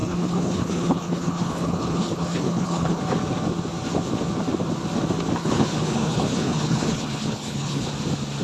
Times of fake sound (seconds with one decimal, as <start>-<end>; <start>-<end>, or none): 0.0-3.0; 5.4-7.9